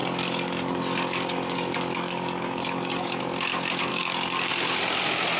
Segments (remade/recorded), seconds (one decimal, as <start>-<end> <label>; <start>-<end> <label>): 0.0-3.2 remade; 3.2-3.9 recorded; 3.9-4.5 remade; 4.5-5.4 recorded